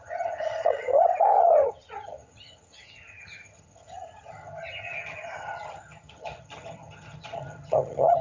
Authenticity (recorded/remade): remade